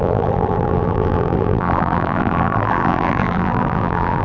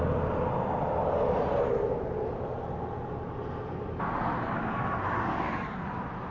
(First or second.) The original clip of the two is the second